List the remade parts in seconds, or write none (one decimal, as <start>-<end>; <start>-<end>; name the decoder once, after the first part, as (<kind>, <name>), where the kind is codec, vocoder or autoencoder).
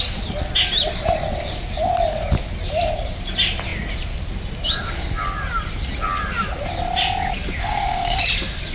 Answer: 7.6-8.2 (codec, SNAC)